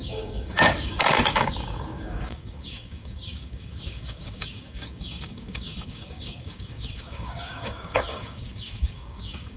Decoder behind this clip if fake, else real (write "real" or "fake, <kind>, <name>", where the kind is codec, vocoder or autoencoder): fake, codec, DAC